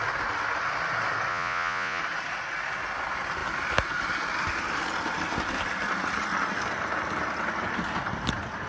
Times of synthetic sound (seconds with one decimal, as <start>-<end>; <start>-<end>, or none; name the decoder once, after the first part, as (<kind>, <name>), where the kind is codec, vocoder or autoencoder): 1.3-2.0 (vocoder, Vocos)